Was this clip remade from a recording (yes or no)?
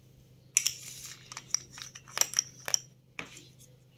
no